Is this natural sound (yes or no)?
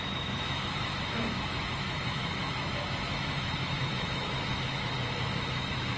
no